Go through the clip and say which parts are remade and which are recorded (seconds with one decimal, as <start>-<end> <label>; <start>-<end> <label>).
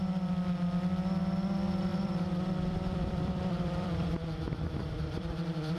0.0-1.9 recorded; 1.9-5.8 remade